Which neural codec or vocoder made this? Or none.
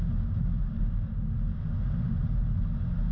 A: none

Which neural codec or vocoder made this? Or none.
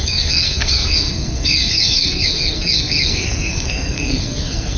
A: codec, SNAC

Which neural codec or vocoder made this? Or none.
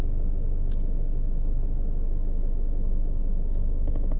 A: none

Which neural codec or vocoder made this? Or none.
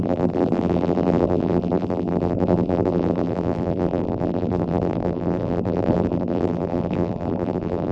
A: vocoder, BigVGAN v2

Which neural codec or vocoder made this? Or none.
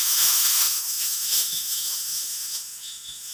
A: autoencoder, DAC-VAE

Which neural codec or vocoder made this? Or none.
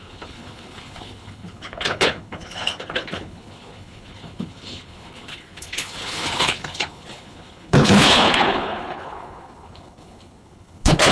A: codec, HILCodec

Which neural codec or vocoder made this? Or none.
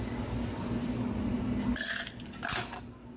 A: none